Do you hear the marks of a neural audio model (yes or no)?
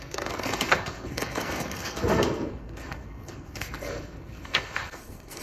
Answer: yes